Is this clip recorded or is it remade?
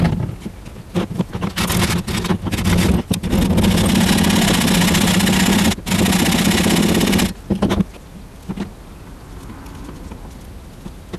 recorded